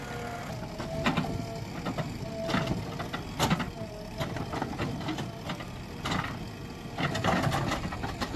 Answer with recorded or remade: recorded